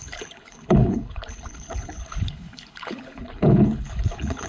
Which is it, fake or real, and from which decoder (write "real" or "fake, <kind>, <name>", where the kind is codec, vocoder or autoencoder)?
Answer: fake, codec, HILCodec